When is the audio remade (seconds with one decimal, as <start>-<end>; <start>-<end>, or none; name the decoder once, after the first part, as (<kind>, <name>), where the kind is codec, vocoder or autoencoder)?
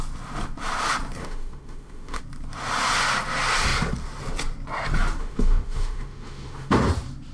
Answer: 1.2-2.2 (autoencoder, DAC-VAE); 5.2-6.7